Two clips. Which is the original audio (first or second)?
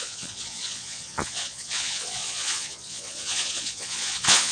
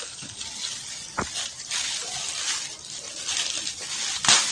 second